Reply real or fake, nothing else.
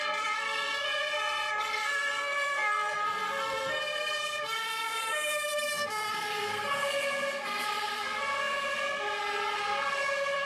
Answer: fake